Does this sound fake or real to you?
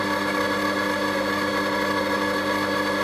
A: real